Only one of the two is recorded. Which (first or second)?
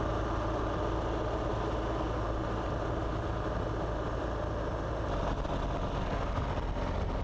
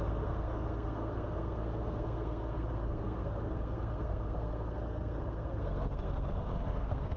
first